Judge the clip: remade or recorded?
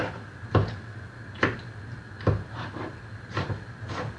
recorded